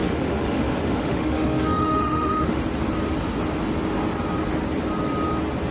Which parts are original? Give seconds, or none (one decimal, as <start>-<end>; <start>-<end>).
2.6-5.7